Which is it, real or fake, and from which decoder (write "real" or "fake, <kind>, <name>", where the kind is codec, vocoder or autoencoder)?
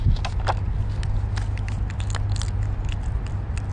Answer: real